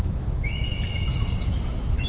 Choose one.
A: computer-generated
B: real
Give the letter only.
A